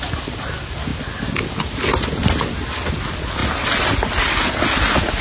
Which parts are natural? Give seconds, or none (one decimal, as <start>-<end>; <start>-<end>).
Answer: 0.0-5.2